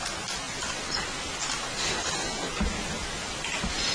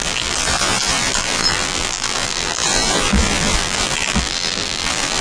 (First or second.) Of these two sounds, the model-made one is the second